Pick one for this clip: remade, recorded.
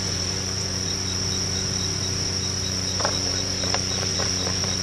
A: remade